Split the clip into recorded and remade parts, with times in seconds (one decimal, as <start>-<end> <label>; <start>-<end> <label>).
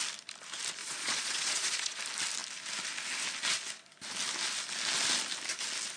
0.0-0.8 recorded; 0.8-2.0 remade; 2.0-6.0 recorded